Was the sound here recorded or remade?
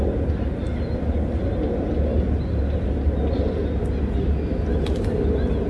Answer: recorded